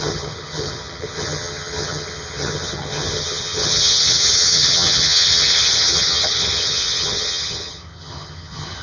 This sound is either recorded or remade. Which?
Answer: remade